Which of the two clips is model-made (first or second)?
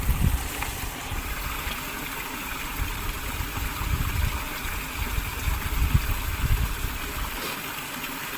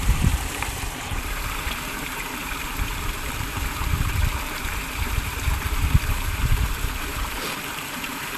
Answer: second